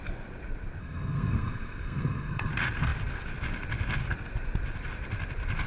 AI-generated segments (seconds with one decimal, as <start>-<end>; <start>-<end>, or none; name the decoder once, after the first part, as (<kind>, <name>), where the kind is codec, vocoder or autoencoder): 0.8-2.5 (codec, SNAC)